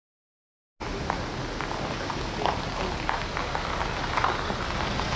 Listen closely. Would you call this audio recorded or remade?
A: recorded